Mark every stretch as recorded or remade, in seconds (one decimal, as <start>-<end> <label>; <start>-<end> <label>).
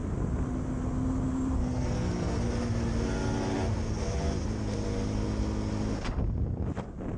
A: 0.0-1.6 recorded; 1.6-2.4 remade; 2.4-7.2 recorded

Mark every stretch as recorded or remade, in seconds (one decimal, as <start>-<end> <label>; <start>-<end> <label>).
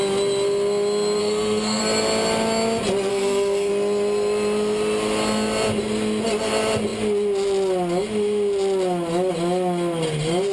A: 0.0-1.2 recorded; 1.2-1.8 remade; 1.8-3.1 recorded; 3.1-3.7 remade; 3.7-10.5 recorded